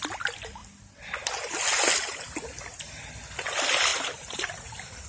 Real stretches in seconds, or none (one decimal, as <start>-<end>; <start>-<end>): 0.0-3.9; 4.5-5.1

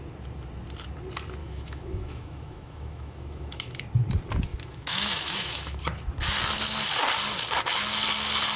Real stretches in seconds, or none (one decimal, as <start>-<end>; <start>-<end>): 0.0-1.4; 3.8-4.5; 5.8-8.6

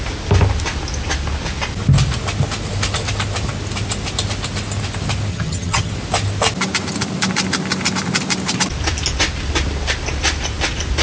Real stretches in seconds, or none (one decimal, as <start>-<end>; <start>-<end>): 0.0-5.3; 5.9-11.0

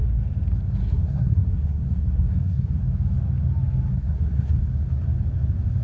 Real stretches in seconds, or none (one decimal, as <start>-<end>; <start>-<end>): 0.0-0.8; 2.8-3.9; 4.6-5.8